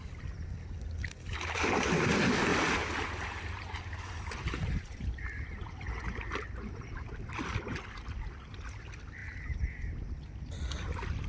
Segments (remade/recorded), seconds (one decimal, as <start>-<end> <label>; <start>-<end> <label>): 0.0-2.5 recorded; 2.5-7.3 remade; 7.3-9.2 recorded; 9.2-10.1 remade; 10.1-11.3 recorded